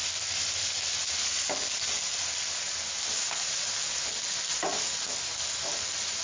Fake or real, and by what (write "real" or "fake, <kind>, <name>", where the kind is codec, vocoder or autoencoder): real